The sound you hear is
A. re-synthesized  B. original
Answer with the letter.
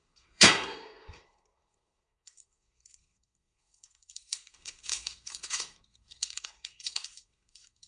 A